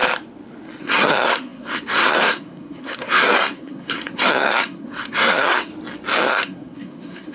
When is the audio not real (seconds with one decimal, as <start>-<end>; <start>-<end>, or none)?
0.8-5.7; 6.3-7.3